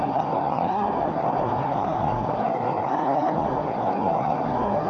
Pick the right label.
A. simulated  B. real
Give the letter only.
A